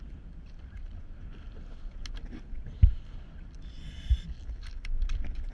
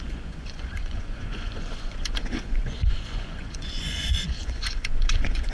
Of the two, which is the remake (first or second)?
second